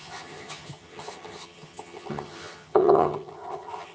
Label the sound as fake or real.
fake